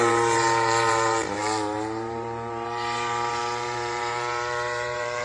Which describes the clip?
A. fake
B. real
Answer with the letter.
A